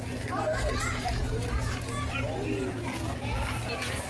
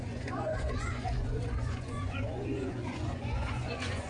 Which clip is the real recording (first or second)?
first